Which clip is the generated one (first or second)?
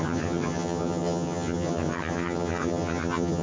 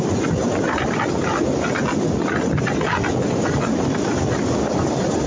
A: first